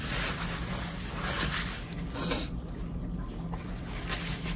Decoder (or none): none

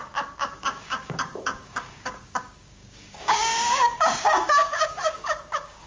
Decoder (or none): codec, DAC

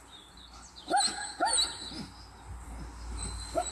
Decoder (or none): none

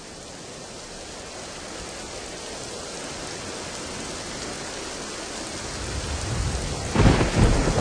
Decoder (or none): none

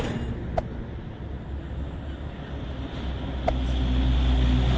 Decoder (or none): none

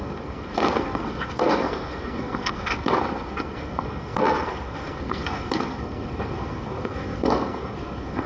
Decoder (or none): codec, SNAC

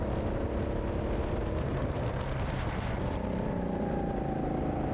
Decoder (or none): none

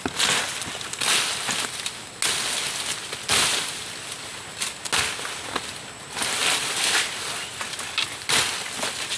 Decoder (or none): none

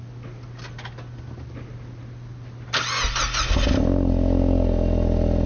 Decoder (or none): none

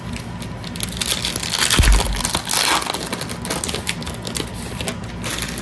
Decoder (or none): none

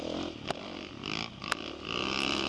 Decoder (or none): none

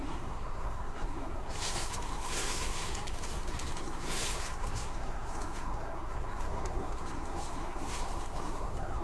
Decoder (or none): codec, SNAC